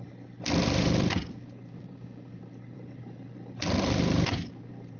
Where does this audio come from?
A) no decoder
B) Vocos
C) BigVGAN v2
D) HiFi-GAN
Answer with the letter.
C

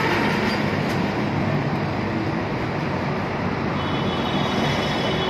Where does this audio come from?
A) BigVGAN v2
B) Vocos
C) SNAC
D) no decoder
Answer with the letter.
D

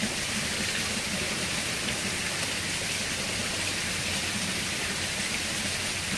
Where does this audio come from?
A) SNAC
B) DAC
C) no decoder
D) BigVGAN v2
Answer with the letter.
C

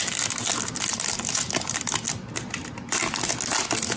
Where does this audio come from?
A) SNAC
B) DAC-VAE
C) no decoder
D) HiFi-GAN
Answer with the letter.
C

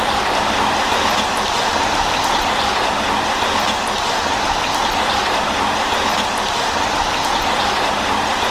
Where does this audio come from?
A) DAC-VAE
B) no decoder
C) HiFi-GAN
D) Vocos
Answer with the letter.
B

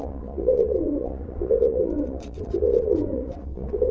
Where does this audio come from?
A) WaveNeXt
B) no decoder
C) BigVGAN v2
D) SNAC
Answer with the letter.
A